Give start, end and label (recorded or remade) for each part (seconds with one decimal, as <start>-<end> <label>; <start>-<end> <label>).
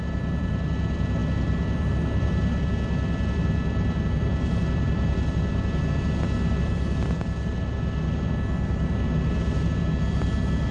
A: 0.0-10.7 recorded